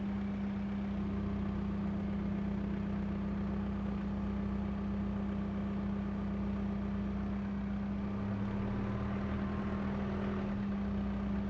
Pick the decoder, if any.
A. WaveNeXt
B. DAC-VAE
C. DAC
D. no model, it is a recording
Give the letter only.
D